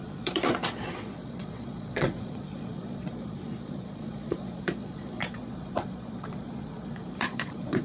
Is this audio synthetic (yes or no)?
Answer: yes